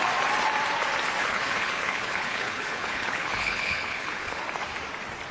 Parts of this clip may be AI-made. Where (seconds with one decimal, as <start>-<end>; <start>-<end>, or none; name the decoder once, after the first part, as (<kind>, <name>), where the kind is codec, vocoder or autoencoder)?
1.2-4.4 (codec, HILCodec)